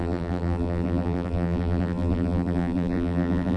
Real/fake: fake